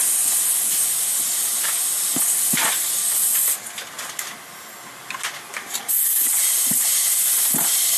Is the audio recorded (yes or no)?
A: yes